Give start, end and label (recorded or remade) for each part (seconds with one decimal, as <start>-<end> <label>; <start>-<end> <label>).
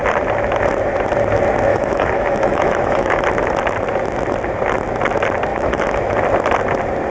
0.0-1.7 recorded; 1.7-3.2 remade; 3.2-5.5 recorded; 5.5-6.1 remade; 6.1-7.1 recorded